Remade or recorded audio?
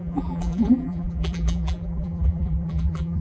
remade